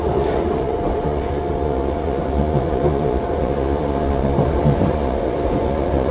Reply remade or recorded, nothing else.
remade